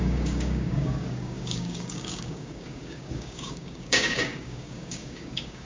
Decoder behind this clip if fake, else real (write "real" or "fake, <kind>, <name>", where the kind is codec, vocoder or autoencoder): fake, codec, DAC